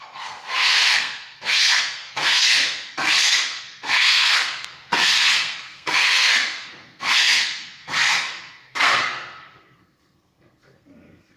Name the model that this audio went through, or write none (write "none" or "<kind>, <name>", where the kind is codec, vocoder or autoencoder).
codec, SNAC